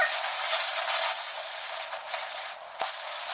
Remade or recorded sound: recorded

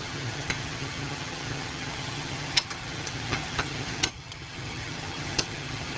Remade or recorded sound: remade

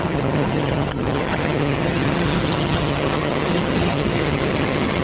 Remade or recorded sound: remade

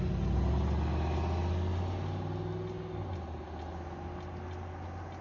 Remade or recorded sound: recorded